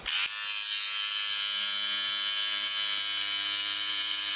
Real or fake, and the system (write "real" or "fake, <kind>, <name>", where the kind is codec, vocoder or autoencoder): real